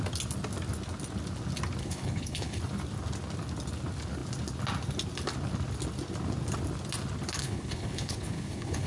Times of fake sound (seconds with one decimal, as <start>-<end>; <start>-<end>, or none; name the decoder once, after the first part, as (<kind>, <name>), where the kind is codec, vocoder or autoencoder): 1.8-2.6 (codec, HILCodec); 7.4-8.9